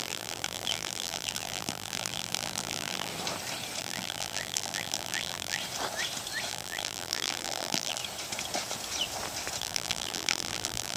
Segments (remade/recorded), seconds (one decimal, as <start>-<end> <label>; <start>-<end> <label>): 0.0-3.1 remade; 3.1-3.8 recorded; 3.8-5.6 remade; 5.6-6.5 recorded; 6.5-8.0 remade; 8.0-9.6 recorded; 9.6-11.0 remade